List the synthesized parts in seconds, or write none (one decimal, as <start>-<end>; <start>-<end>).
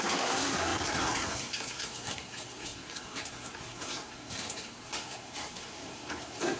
0.0-6.6